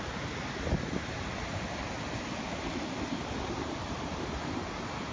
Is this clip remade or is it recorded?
recorded